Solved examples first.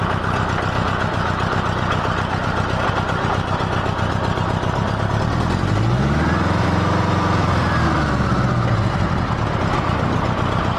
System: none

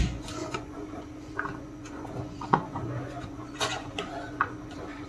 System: vocoder, Vocos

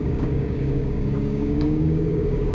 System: codec, DAC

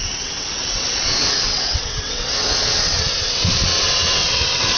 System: vocoder, WaveNeXt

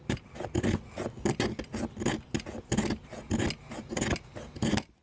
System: none